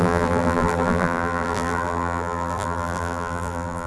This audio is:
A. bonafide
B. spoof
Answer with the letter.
B